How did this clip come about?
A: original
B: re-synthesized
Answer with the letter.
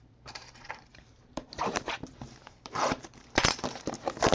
B